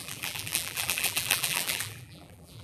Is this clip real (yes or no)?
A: no